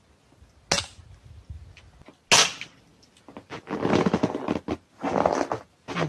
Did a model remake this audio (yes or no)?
no